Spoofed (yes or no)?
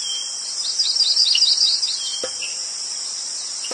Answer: no